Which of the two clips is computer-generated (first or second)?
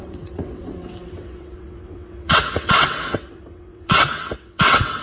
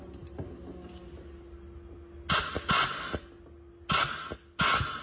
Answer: first